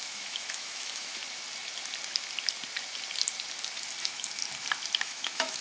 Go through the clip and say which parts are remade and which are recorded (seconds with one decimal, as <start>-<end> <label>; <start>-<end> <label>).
0.0-1.2 remade; 1.2-4.0 recorded; 4.0-4.4 remade; 4.4-5.0 recorded; 5.0-5.6 remade

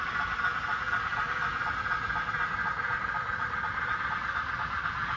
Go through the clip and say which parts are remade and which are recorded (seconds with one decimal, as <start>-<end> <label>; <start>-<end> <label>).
0.0-2.6 recorded; 2.6-4.0 remade; 4.0-5.2 recorded

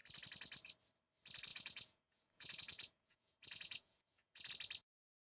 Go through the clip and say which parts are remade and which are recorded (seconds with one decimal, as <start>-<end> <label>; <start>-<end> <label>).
0.0-1.5 recorded; 1.5-4.5 remade; 4.5-5.3 recorded

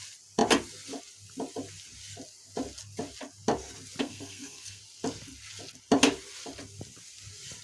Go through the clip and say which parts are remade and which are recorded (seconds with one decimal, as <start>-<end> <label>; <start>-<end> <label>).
0.0-4.0 recorded; 4.0-4.8 remade; 4.8-7.6 recorded

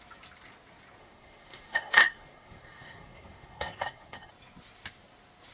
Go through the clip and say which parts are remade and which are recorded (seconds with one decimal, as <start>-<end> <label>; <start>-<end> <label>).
0.0-1.0 recorded; 1.0-4.3 remade; 4.3-5.5 recorded